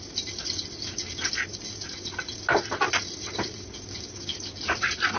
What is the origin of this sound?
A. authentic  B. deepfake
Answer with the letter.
A